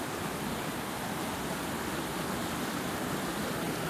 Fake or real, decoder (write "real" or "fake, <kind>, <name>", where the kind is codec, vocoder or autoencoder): real